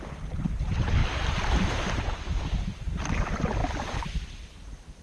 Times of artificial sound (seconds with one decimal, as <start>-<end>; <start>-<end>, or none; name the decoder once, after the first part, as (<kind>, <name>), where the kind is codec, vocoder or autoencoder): none